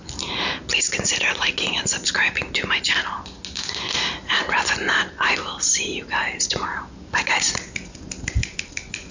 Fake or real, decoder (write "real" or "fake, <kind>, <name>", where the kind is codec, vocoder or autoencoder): real